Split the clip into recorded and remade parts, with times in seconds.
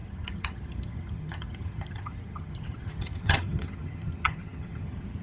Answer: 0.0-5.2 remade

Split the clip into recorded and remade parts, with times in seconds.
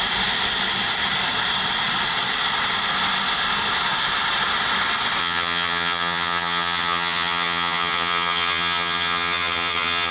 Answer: 0.0-5.2 recorded; 5.2-10.1 remade